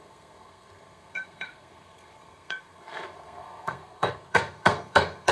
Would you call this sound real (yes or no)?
no